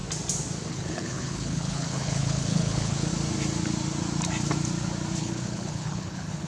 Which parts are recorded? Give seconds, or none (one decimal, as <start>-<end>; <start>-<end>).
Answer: 0.0-0.7; 3.1-5.2